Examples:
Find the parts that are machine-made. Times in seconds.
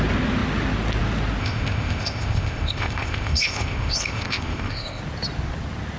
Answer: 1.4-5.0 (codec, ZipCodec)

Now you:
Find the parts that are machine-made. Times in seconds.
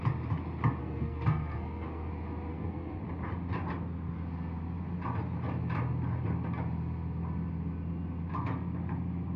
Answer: 0.8-2.1 (codec, SNAC); 2.5-3.0